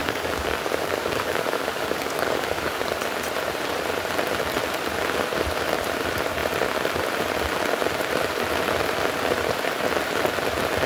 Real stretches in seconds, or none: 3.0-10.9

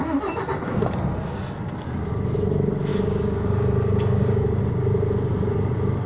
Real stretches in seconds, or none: 0.0-2.9; 4.6-6.1

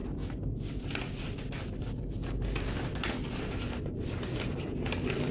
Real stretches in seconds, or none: 0.0-5.3

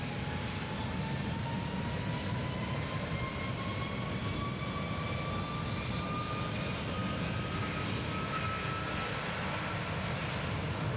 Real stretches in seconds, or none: 0.0-11.0

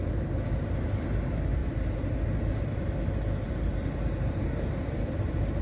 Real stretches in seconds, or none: 0.0-4.4; 5.1-5.6

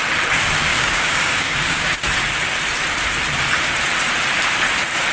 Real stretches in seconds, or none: 0.0-0.7; 2.0-5.1

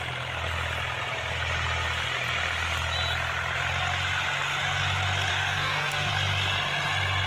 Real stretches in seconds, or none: 0.0-5.3; 6.1-7.3

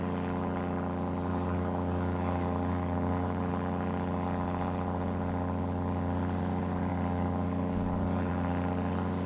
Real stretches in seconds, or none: 0.0-1.3; 3.5-6.9; 8.3-9.3